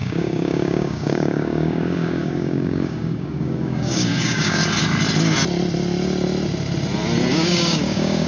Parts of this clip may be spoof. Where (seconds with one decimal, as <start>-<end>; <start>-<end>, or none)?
0.0-4.6; 7.3-8.3